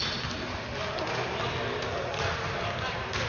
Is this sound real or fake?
real